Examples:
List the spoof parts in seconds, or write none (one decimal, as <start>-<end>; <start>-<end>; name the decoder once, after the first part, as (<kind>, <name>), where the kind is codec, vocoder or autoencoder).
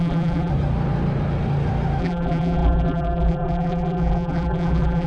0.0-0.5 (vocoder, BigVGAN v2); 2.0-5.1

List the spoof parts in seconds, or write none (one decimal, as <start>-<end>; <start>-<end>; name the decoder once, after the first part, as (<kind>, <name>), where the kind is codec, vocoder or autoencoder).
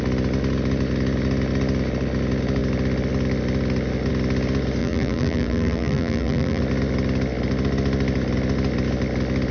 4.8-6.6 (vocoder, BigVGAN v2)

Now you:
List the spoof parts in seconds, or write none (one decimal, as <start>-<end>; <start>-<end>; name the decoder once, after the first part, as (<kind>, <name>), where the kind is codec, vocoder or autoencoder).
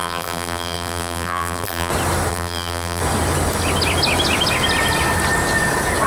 0.0-1.9 (vocoder, BigVGAN v2); 2.3-3.0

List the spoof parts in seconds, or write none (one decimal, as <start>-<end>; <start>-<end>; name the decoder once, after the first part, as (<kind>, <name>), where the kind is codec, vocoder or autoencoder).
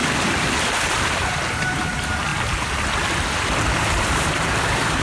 1.0-2.3 (vocoder, BigVGAN v2); 3.7-5.0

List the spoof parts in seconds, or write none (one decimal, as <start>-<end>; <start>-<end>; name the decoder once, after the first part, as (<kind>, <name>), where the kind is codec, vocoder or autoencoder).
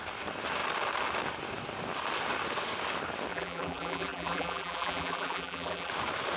3.3-5.9 (vocoder, BigVGAN v2)